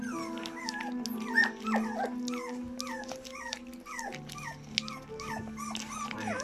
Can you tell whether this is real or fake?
real